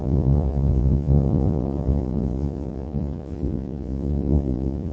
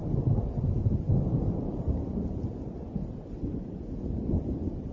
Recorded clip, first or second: second